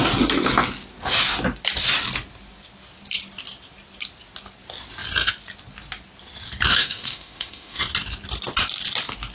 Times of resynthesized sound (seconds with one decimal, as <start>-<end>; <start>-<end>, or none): 6.7-7.8